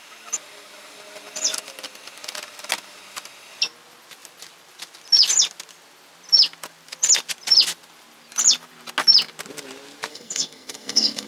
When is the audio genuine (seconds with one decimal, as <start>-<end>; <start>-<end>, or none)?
0.0-10.1